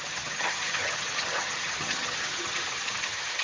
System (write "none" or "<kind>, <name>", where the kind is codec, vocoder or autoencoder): vocoder, HiFi-GAN